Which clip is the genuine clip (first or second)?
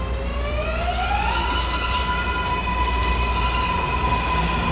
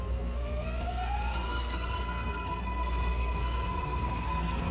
first